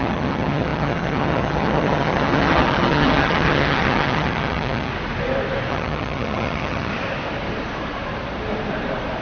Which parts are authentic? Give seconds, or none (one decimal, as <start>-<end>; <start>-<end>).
4.9-5.7; 6.9-9.2